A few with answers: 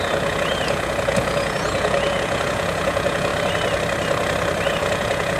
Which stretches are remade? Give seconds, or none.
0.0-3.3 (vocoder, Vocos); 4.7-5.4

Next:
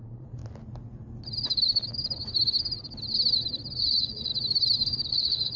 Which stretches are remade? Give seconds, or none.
0.0-0.4 (vocoder, Vocos); 3.8-4.3; 5.1-5.6

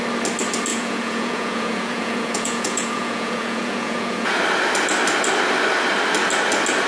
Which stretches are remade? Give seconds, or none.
0.7-4.4 (vocoder, Vocos)